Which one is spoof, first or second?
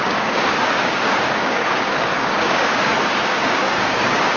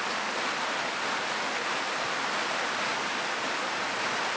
first